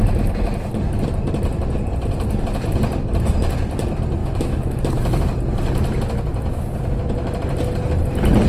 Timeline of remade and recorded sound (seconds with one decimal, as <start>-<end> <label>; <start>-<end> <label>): 0.0-4.2 recorded; 4.2-4.8 remade; 4.8-8.5 recorded